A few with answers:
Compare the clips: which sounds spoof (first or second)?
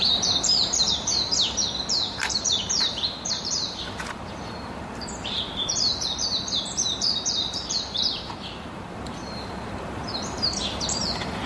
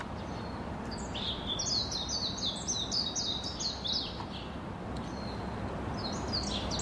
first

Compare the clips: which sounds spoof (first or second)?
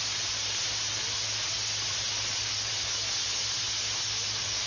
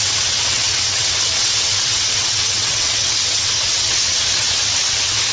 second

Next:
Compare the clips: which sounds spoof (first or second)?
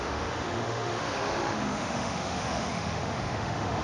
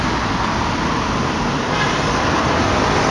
first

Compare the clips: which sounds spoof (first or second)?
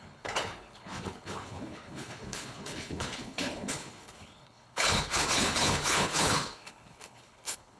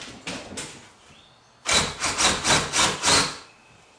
first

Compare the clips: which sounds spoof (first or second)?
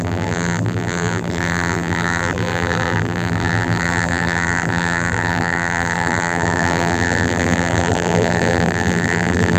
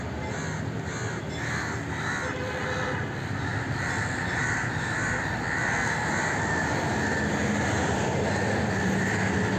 first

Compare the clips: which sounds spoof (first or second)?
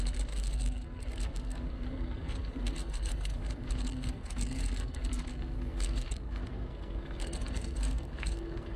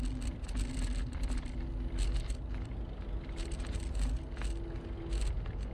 first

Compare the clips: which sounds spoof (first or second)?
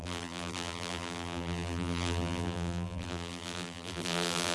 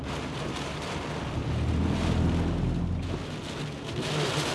first